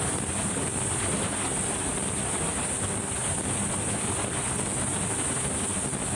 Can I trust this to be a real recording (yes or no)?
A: yes